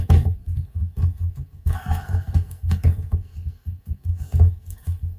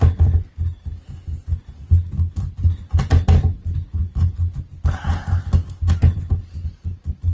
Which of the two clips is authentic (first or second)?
second